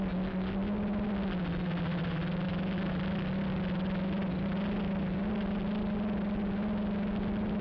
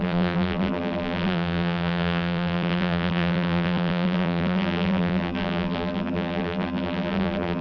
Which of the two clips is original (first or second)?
first